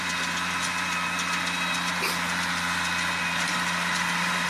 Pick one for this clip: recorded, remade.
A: recorded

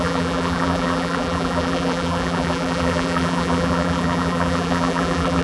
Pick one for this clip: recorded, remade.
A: remade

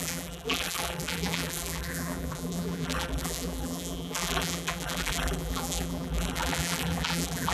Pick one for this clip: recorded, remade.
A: remade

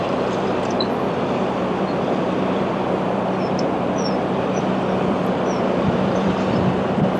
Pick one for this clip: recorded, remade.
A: remade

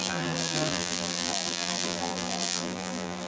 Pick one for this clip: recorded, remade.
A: remade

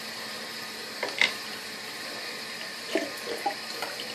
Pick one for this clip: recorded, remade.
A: remade